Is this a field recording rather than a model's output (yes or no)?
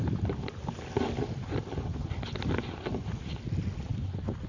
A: yes